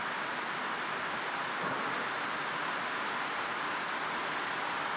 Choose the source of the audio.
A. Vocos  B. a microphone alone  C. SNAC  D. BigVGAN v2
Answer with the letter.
B